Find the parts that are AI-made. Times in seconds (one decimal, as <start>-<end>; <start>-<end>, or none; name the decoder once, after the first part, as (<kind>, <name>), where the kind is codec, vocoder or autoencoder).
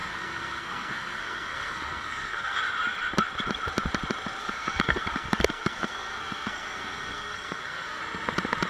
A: 0.0-2.6 (codec, SNAC); 4.4-8.0